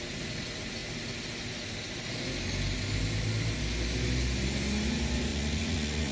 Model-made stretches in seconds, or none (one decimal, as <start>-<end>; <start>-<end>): 5.3-6.1